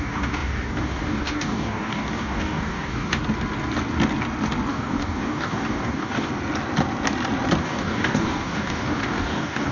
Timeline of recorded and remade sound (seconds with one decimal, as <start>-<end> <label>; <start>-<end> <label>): 0.0-3.2 remade; 3.2-4.7 recorded; 4.7-6.3 remade; 6.3-7.6 recorded; 7.6-9.7 remade